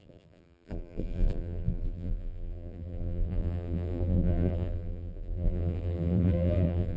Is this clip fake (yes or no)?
yes